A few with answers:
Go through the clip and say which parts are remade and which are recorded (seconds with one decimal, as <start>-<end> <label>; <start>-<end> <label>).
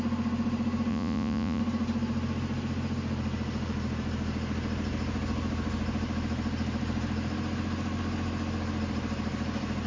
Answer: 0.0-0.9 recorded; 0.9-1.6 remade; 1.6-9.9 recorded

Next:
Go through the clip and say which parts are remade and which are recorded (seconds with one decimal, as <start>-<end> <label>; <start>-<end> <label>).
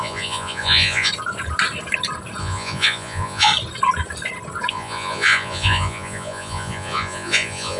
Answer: 0.0-1.1 remade; 1.1-2.4 recorded; 2.4-3.5 remade; 3.5-4.7 recorded; 4.7-7.8 remade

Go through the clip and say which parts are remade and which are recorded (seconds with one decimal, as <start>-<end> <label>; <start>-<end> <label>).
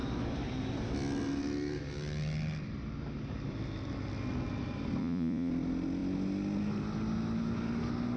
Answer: 0.0-5.0 recorded; 5.0-5.5 remade; 5.5-8.2 recorded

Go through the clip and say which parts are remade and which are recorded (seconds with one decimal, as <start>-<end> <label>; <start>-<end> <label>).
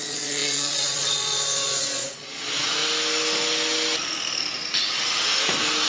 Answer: 0.0-2.8 remade; 2.8-5.9 recorded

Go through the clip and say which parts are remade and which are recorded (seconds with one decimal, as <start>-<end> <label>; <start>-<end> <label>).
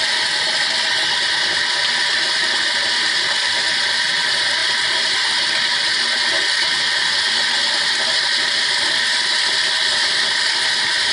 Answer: 0.0-11.1 recorded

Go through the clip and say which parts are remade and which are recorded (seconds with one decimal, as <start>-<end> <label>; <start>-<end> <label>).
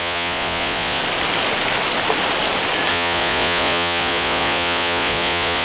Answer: 0.0-1.0 remade; 1.0-2.9 recorded; 2.9-5.6 remade